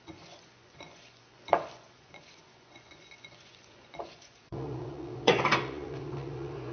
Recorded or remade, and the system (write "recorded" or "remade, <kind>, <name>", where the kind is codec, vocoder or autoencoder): remade, vocoder, Vocos